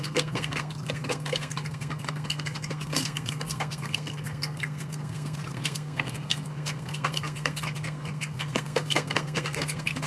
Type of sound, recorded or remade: remade